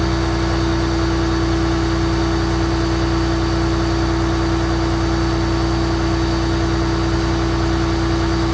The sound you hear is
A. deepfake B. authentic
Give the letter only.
B